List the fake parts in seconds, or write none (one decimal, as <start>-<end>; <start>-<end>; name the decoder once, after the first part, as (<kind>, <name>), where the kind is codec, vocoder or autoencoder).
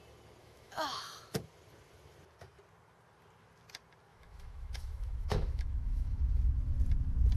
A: 0.4-1.0 (autoencoder, DAC-VAE); 4.1-6.2